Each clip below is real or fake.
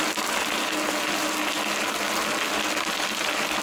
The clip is real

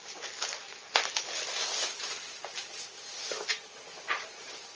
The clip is real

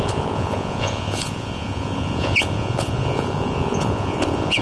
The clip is fake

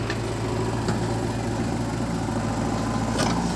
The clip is real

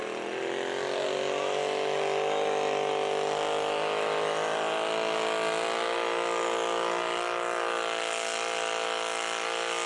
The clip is real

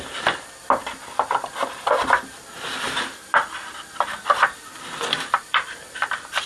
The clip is fake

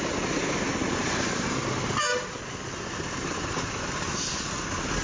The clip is real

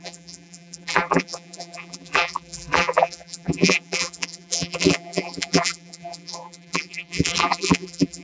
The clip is fake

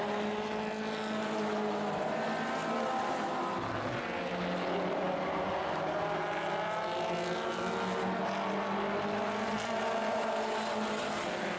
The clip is real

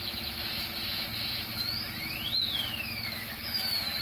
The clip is fake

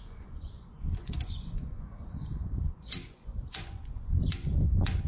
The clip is fake